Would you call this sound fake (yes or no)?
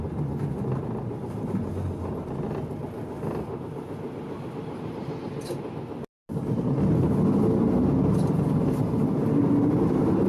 no